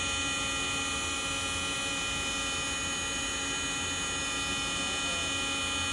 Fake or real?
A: real